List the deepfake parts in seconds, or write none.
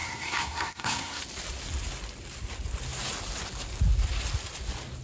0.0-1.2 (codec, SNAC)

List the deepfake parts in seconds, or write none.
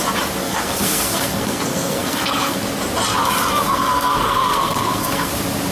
0.4-2.6 (codec, SNAC); 3.6-5.3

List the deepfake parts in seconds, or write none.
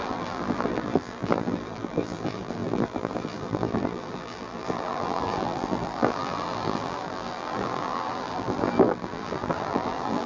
0.0-10.3 (vocoder, BigVGAN v2)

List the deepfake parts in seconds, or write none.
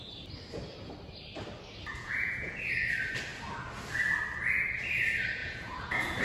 1.9-2.6 (vocoder, Vocos); 5.4-6.2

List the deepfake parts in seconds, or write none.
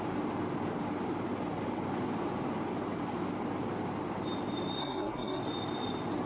4.8-5.4 (codec, SNAC)